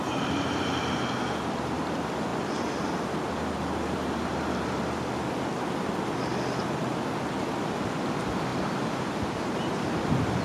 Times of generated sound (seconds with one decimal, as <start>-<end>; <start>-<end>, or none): none